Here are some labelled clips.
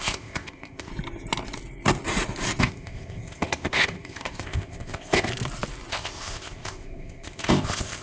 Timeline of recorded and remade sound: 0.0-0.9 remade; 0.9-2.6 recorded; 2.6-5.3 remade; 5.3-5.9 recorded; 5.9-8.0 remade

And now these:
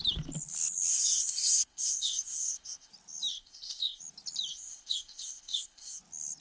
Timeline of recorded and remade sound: 0.0-0.9 recorded; 0.9-2.9 remade; 2.9-3.3 recorded; 3.3-4.0 remade; 4.0-4.5 recorded; 4.5-6.0 remade; 6.0-6.4 recorded

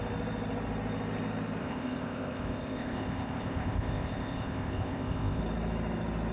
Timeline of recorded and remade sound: 0.0-1.6 recorded; 1.6-5.4 remade; 5.4-6.3 recorded

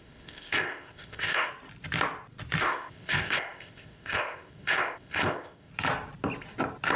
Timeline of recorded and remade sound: 0.0-1.5 remade; 1.5-2.6 recorded; 2.6-5.7 remade; 5.7-7.0 recorded

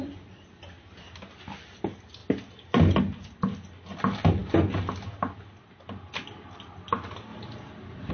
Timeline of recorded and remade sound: 0.0-8.1 recorded

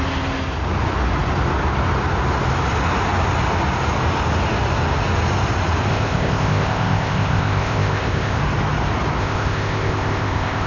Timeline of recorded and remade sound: 0.0-5.9 recorded; 5.9-8.4 remade; 8.4-9.2 recorded; 9.2-10.7 remade